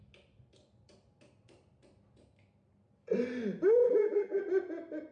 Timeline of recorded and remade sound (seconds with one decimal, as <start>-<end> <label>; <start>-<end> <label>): 0.0-3.8 recorded; 3.8-4.4 remade; 4.4-5.1 recorded